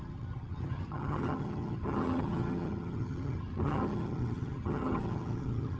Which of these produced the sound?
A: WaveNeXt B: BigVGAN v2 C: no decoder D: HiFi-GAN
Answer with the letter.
D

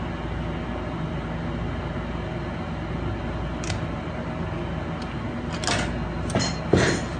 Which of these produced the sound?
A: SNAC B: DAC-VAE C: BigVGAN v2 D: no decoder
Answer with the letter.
D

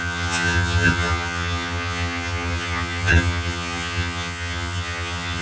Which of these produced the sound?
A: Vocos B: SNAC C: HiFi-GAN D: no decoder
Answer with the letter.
C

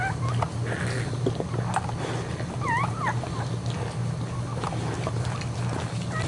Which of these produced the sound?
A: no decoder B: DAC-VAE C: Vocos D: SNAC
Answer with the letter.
A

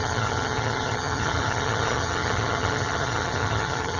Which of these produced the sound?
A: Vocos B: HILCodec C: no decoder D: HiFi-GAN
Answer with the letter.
D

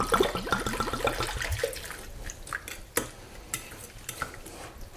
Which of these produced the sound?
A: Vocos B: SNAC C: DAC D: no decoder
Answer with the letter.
D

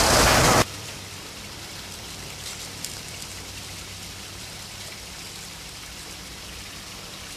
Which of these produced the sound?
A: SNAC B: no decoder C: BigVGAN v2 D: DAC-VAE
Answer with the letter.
C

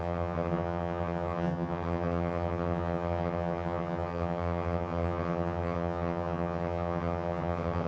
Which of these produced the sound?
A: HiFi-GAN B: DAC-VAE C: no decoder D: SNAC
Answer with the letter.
A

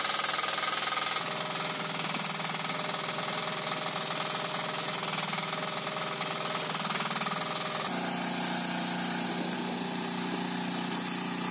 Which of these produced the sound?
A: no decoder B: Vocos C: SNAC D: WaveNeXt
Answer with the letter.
A